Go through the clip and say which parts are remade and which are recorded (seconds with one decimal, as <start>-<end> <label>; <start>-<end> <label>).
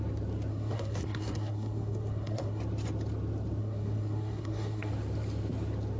0.0-0.5 recorded; 0.5-2.6 remade; 2.6-3.6 recorded; 3.6-4.9 remade; 4.9-6.0 recorded